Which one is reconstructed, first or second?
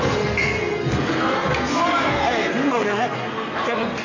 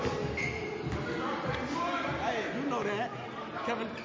first